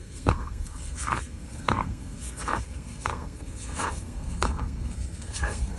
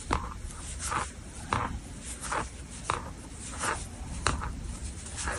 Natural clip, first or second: second